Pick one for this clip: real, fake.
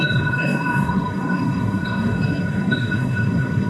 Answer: fake